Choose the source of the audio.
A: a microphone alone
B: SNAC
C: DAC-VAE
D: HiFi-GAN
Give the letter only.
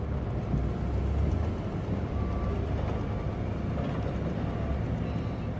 A